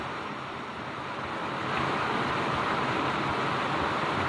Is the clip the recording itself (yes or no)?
yes